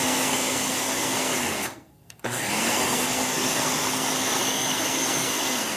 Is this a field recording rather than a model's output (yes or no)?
no